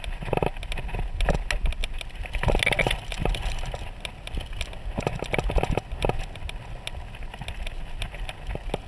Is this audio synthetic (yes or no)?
no